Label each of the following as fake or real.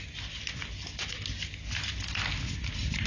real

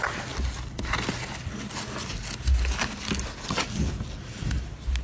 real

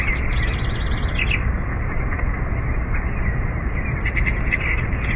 real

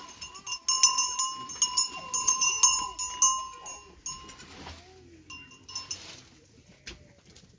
real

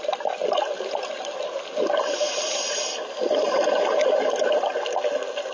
real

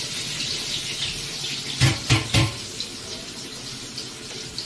real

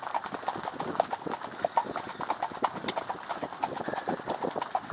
real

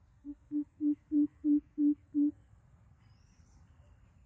fake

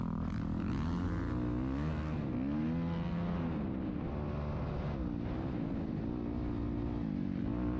real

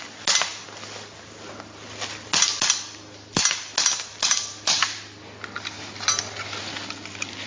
real